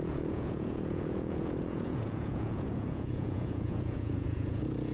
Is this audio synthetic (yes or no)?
yes